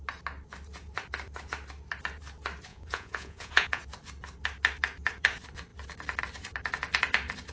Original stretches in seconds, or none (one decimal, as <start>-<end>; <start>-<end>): 0.0-2.7; 3.8-7.5